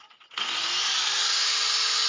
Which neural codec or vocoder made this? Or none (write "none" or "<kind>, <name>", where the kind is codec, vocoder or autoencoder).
none